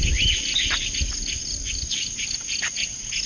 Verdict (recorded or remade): recorded